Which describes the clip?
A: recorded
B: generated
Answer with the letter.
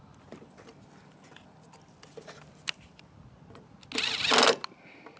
A